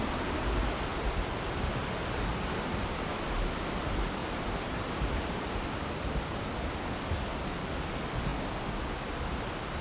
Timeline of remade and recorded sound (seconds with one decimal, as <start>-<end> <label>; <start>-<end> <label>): 0.0-2.3 recorded; 2.3-3.1 remade; 3.1-4.2 recorded; 4.2-5.8 remade; 5.8-9.8 recorded